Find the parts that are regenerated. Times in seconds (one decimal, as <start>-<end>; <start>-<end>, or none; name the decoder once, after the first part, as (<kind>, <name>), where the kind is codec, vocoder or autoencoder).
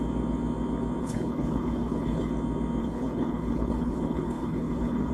1.0-2.3 (codec, HILCodec); 2.8-5.1